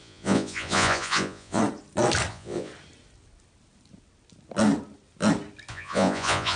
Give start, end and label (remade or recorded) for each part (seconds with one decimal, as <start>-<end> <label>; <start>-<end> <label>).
0.0-1.6 remade; 1.6-2.3 recorded; 2.3-2.7 remade; 2.7-5.7 recorded; 5.7-6.6 remade